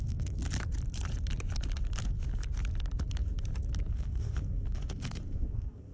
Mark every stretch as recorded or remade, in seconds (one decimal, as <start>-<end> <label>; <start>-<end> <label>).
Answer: 0.0-0.4 remade; 0.4-3.9 recorded; 3.9-5.9 remade